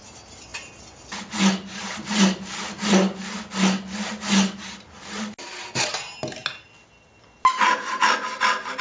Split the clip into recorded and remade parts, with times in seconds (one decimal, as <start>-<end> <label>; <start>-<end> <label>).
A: 0.0-8.8 recorded